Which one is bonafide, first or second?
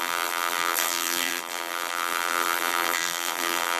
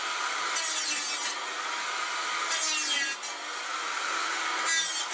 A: second